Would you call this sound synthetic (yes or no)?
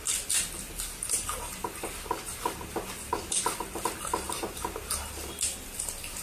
no